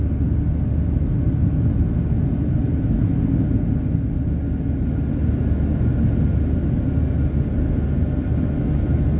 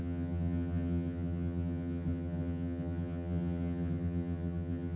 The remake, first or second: second